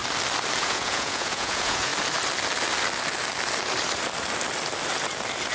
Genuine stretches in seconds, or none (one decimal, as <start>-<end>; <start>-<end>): 0.0-0.6; 1.9-5.5